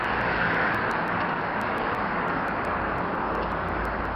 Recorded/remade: remade